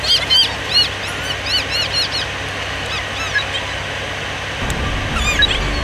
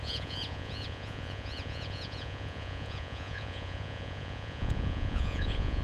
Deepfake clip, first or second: second